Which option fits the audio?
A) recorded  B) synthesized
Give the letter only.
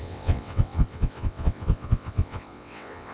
B